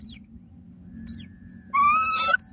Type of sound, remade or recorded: recorded